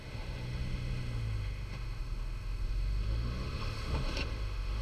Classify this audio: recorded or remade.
remade